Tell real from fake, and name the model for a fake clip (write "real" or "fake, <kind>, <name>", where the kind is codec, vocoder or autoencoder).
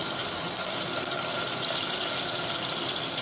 real